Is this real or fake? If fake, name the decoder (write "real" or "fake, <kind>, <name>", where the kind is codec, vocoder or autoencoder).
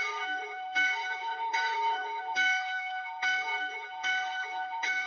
fake, autoencoder, DAC-VAE